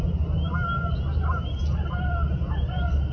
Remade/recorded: recorded